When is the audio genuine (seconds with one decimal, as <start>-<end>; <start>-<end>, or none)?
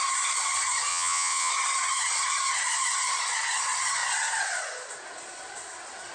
0.0-0.9; 1.5-6.1